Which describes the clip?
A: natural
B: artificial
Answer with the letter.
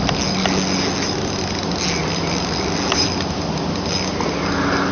A